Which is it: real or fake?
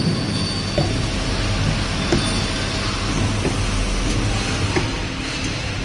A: real